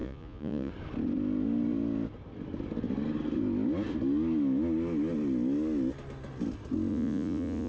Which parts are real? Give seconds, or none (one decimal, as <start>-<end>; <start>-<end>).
0.7-6.9